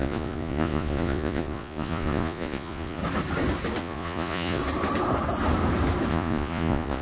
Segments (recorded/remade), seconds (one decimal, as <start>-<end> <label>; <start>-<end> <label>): 0.0-3.0 remade; 3.0-3.8 recorded; 3.8-4.6 remade; 4.6-6.1 recorded; 6.1-7.0 remade

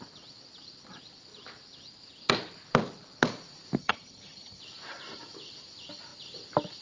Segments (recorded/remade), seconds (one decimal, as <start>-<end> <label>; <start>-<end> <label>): 0.0-3.8 recorded; 3.8-4.6 remade; 4.6-6.8 recorded

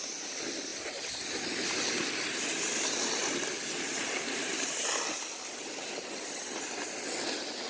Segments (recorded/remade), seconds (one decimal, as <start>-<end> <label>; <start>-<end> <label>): 0.0-7.7 recorded

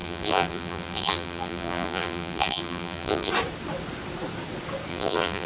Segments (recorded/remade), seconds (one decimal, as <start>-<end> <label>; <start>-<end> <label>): 0.0-3.3 remade; 3.3-4.9 recorded; 4.9-5.5 remade

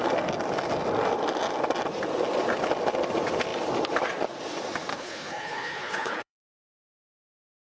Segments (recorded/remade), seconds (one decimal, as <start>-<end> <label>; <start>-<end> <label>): 0.0-4.9 recorded; 4.9-6.9 remade; 6.9-7.8 recorded

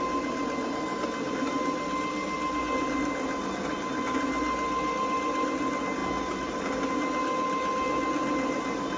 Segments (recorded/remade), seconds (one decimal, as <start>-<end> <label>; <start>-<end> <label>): 0.0-9.0 recorded

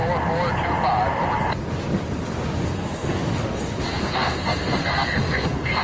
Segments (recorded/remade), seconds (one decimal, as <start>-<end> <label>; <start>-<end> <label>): 0.0-2.7 recorded; 2.7-3.3 remade; 3.3-4.0 recorded; 4.0-5.8 remade

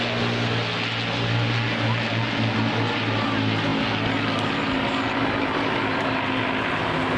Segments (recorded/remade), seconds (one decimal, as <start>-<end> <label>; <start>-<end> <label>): 0.0-7.2 recorded